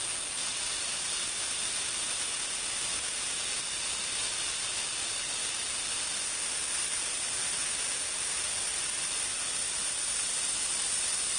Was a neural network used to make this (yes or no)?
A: no